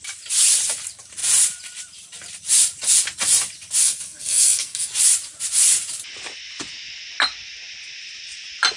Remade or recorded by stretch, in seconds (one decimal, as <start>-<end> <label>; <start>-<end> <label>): 0.0-3.8 recorded; 3.8-4.9 remade; 4.9-8.8 recorded